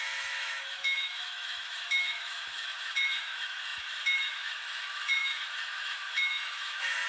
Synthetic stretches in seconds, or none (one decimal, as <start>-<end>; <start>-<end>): 0.0-7.1